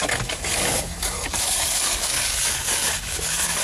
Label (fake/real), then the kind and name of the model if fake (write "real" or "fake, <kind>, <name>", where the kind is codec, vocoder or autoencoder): fake, codec, DAC